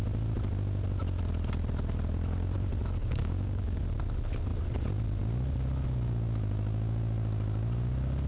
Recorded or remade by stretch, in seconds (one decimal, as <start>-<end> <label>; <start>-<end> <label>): 0.0-3.0 recorded; 3.0-3.8 remade; 3.8-8.3 recorded